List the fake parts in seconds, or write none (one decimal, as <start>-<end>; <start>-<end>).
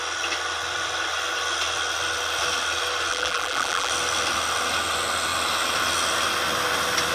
3.1-3.9